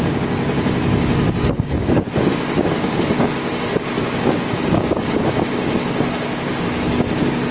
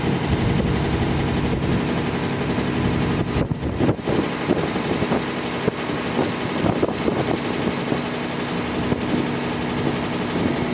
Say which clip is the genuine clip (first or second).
second